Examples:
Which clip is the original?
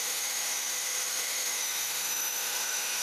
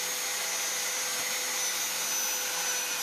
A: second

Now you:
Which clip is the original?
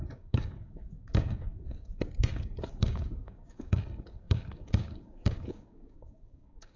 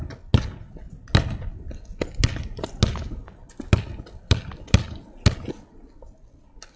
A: second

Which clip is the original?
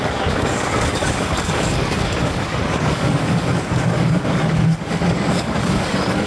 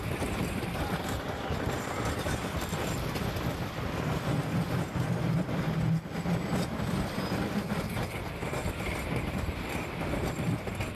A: second